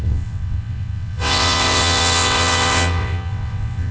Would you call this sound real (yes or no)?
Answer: no